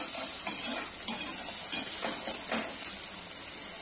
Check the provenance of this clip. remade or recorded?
recorded